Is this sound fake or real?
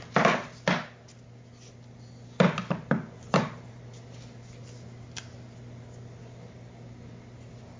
real